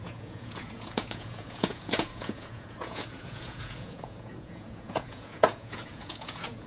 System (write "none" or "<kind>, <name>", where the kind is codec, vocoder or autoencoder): vocoder, Vocos